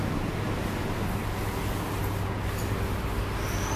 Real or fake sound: real